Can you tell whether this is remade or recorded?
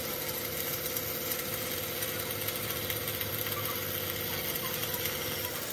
recorded